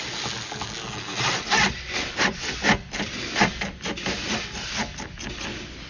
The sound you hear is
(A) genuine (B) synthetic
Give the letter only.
A